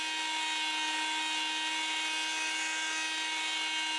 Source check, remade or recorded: recorded